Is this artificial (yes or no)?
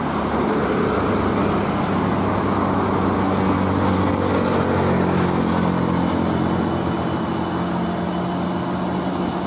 no